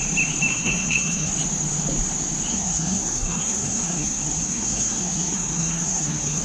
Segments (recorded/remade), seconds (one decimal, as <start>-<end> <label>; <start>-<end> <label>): 0.0-0.5 recorded; 0.5-1.3 remade; 1.3-2.5 recorded; 2.5-6.4 remade